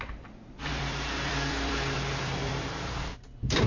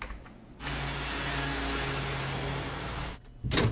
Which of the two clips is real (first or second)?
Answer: second